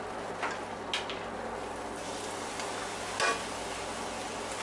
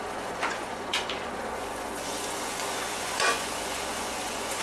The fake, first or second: second